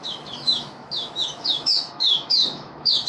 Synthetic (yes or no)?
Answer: yes